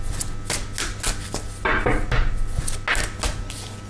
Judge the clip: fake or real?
real